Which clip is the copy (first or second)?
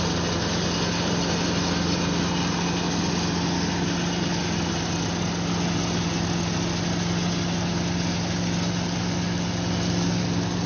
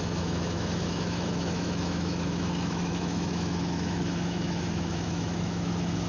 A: second